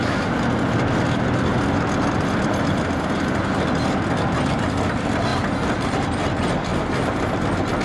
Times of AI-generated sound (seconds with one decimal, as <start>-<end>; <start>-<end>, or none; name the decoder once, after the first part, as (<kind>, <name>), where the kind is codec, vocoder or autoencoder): 5.3-6.3 (vocoder, BigVGAN v2); 6.7-7.3